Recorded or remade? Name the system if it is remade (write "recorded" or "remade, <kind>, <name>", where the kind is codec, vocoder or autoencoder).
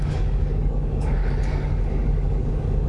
remade, codec, DAC